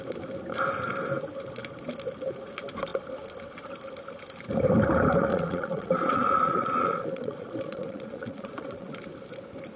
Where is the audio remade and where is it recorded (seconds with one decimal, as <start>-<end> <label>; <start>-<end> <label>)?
0.0-5.3 recorded; 5.3-9.0 remade; 9.0-9.8 recorded